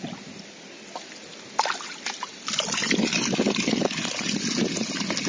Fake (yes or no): no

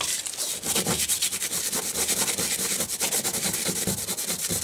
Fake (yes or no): no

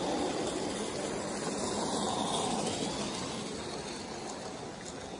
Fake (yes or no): no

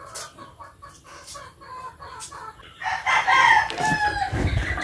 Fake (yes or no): no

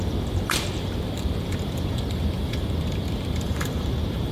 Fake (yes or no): yes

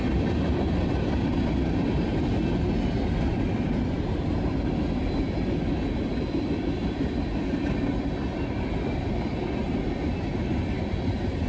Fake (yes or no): no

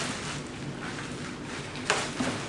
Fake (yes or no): no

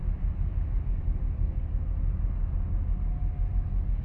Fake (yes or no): no